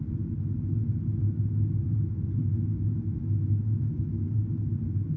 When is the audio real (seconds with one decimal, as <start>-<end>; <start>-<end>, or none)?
0.0-2.4; 4.2-5.2

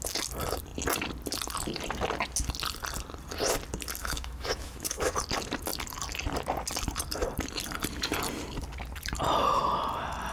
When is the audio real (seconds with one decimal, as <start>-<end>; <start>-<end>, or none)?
0.0-4.0; 5.1-10.3

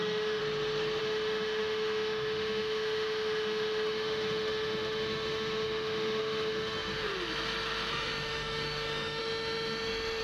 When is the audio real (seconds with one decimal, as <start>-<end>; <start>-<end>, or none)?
0.4-1.0; 7.1-7.9

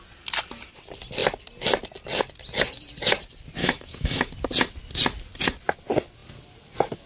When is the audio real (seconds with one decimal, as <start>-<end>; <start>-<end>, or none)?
0.0-3.6; 4.3-7.1

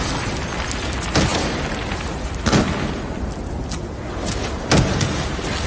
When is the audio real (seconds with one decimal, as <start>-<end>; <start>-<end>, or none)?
0.0-5.7

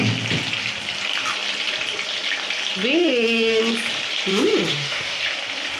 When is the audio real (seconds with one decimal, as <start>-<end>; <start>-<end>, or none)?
0.0-3.0; 3.6-4.3; 5.2-5.8

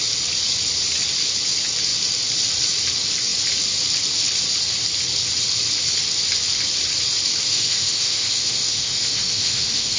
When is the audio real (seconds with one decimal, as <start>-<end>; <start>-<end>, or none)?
0.0-7.5

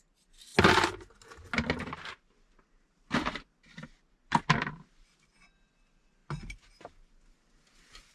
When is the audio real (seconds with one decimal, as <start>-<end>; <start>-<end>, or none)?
0.0-8.1